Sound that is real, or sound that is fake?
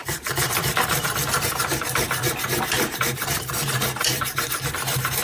fake